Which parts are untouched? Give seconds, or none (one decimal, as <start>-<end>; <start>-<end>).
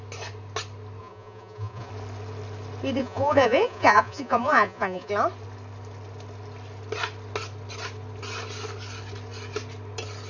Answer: 0.0-1.0; 1.9-3.0; 5.1-10.3